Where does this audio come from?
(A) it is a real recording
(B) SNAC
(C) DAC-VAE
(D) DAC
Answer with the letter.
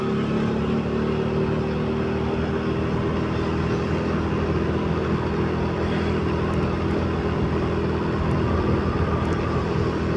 A